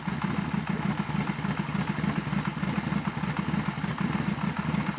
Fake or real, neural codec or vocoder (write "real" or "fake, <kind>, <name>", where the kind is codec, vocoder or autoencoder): real